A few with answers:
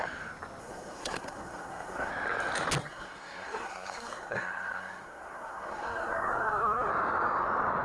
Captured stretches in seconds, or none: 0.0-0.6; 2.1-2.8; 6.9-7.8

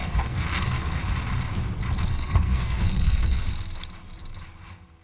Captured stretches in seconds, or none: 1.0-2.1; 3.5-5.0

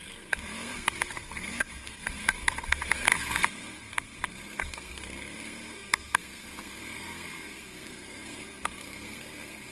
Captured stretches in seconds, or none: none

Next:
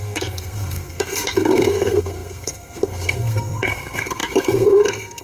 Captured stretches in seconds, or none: none

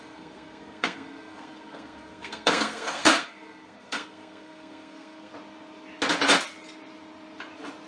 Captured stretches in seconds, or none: 5.3-7.9

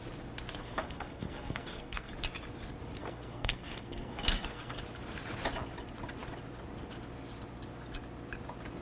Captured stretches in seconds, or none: 0.0-0.6; 2.1-3.0; 4.8-8.8

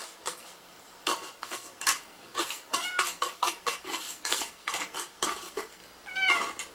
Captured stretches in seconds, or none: 5.8-6.7

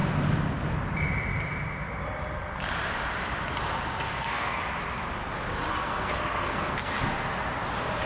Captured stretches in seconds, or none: 0.0-4.1; 4.6-5.7; 6.9-8.1